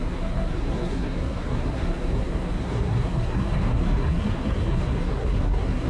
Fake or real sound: fake